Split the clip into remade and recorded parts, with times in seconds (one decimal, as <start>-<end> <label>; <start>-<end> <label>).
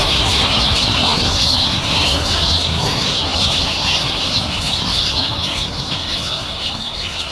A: 0.0-7.3 remade